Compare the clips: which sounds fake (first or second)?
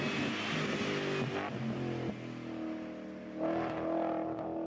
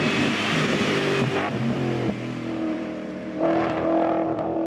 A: second